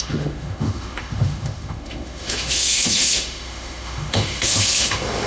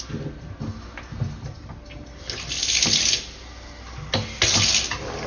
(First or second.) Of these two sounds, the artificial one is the first